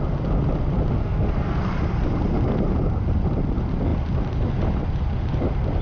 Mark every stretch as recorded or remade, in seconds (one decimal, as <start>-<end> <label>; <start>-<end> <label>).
0.0-1.0 recorded; 1.0-1.6 remade; 1.6-5.8 recorded